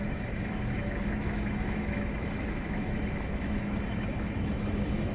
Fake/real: fake